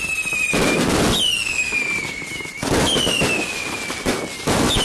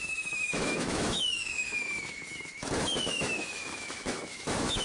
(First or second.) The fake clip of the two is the second